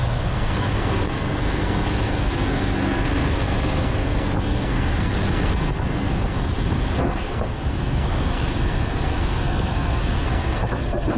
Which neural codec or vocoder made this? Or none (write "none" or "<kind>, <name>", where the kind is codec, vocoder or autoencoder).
codec, SNAC